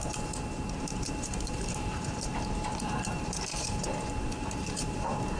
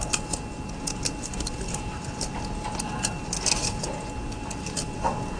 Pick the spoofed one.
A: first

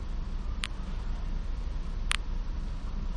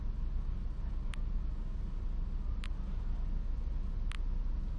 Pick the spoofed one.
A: first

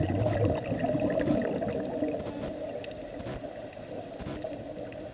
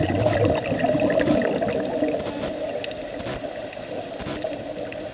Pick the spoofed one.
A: second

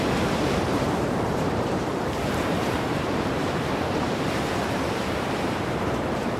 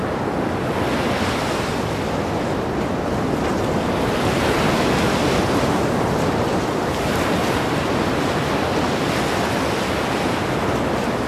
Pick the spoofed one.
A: first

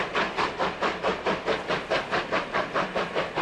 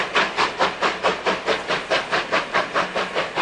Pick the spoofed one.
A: first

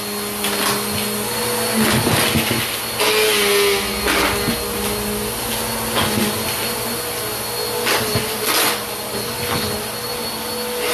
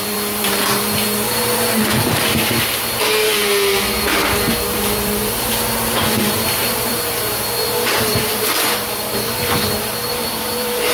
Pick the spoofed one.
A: second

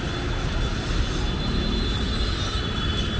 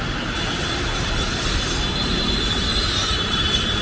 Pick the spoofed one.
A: second